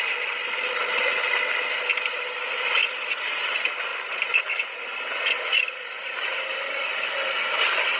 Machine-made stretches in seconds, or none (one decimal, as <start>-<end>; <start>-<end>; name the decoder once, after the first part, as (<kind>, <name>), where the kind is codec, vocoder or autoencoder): none